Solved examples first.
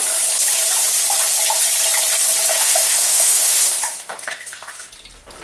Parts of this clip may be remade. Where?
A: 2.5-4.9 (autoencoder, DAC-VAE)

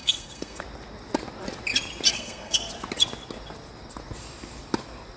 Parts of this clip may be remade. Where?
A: 0.0-0.6 (codec, SNAC); 2.1-2.7